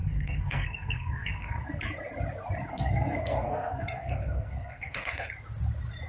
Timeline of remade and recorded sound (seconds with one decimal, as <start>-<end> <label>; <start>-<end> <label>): 0.0-1.8 remade; 1.8-2.7 recorded; 2.7-5.3 remade; 5.3-6.1 recorded